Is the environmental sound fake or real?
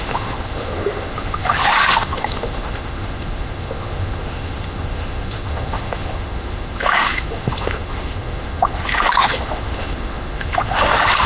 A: fake